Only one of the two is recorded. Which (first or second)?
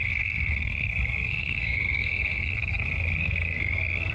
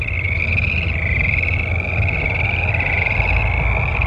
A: second